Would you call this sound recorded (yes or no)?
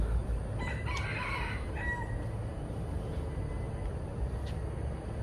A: yes